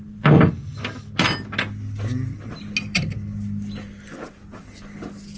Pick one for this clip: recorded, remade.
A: recorded